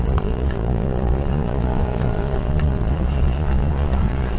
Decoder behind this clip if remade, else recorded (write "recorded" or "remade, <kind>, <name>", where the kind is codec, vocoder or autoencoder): remade, vocoder, Vocos